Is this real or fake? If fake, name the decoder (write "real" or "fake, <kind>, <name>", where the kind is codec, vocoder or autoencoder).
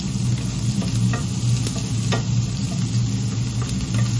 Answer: real